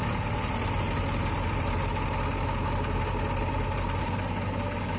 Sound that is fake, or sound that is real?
real